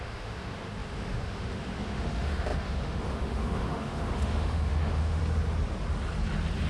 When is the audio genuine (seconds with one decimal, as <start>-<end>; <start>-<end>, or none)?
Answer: 5.2-6.7